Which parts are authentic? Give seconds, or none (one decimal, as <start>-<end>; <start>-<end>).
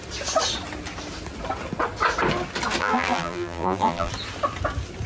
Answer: 0.0-2.8; 4.1-5.1